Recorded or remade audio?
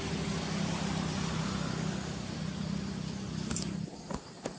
recorded